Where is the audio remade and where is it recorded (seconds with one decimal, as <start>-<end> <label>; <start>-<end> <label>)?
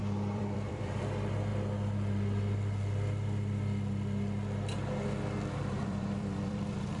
0.0-1.5 remade; 1.5-5.5 recorded; 5.5-7.0 remade